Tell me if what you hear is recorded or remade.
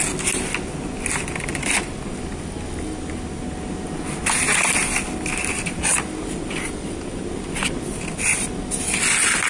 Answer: recorded